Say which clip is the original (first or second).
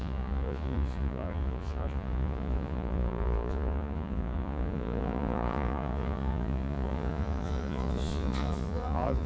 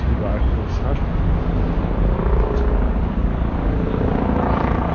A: second